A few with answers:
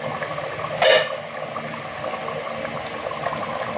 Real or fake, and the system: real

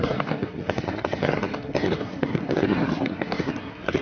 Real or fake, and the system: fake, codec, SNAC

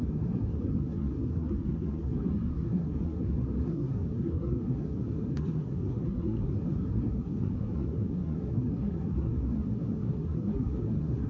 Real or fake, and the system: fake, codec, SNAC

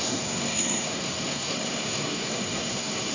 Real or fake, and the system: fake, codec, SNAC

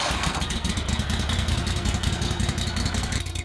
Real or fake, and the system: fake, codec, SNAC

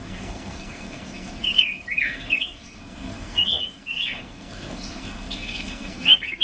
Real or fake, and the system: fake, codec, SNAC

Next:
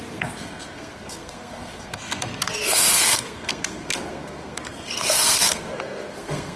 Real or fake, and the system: fake, codec, SNAC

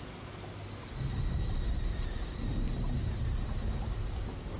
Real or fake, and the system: real